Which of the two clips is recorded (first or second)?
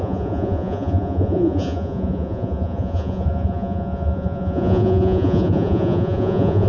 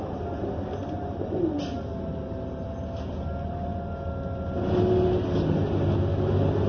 second